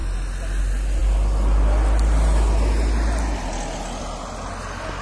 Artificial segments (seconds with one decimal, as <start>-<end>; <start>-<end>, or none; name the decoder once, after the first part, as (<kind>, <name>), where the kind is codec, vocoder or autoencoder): none